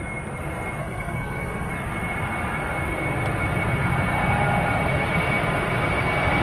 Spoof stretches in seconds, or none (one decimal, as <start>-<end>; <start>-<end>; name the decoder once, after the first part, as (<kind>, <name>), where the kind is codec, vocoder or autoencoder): 0.8-1.7 (codec, SNAC)